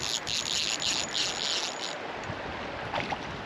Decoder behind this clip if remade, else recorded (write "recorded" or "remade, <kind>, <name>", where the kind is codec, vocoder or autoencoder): recorded